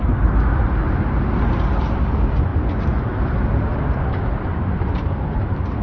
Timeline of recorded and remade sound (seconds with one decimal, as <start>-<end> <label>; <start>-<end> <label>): 0.0-5.8 recorded